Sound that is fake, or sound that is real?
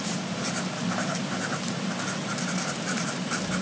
fake